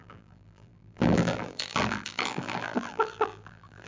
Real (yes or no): no